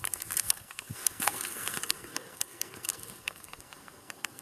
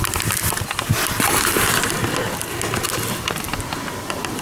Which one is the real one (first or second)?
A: second